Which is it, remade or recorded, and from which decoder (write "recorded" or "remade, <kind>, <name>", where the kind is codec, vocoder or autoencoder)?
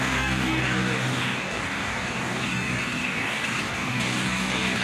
remade, codec, DAC